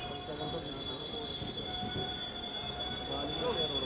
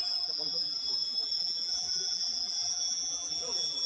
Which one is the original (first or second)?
first